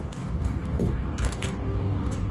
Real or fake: fake